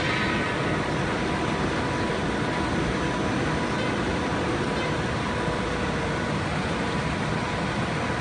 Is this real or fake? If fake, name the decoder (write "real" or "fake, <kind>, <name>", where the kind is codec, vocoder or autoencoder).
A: real